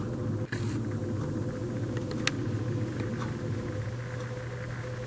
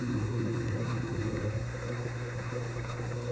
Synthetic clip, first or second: second